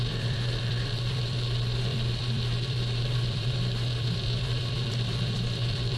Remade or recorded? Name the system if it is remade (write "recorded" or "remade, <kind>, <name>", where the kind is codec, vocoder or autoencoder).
remade, vocoder, BigVGAN v2